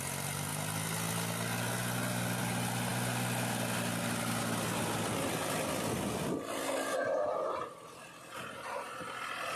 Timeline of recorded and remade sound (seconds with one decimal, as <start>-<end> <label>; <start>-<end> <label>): 0.0-9.6 recorded